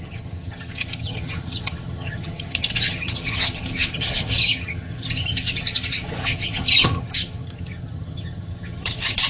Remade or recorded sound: remade